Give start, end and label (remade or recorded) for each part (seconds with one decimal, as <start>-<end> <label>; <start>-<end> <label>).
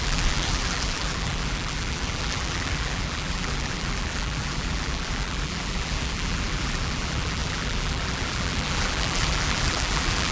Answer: 0.0-10.3 remade